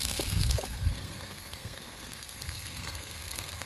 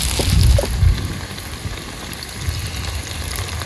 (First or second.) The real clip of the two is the second